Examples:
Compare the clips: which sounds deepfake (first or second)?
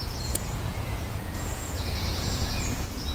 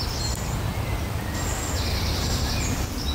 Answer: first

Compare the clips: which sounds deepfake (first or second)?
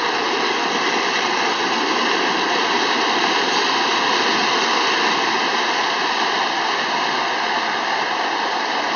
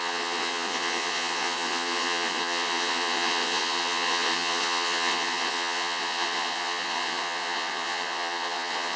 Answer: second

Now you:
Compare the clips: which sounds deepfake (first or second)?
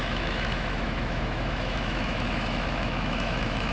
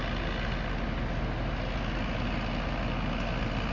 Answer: first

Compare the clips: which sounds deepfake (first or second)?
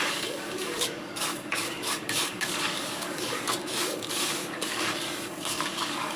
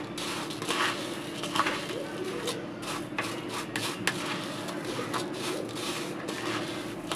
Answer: first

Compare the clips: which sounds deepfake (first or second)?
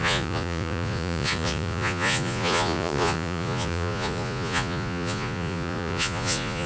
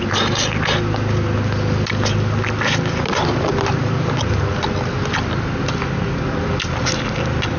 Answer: first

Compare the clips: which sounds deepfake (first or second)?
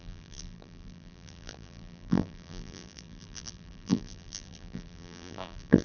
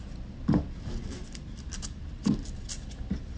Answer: first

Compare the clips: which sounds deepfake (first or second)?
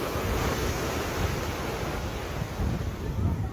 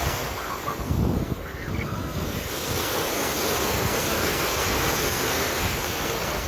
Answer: second